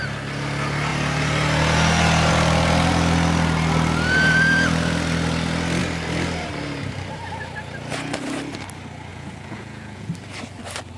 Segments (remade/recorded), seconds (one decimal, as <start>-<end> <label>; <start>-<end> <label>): 0.0-9.1 recorded; 9.1-10.1 remade; 10.1-11.0 recorded